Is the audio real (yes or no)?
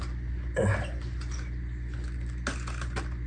yes